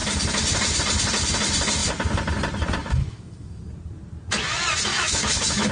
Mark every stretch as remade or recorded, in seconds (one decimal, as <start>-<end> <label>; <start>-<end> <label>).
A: 0.0-2.8 recorded; 2.8-3.6 remade; 3.6-4.9 recorded; 4.9-5.7 remade

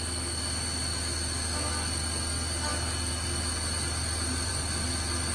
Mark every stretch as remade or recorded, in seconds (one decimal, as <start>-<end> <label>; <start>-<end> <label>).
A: 0.0-0.9 recorded; 0.9-1.7 remade; 1.7-5.3 recorded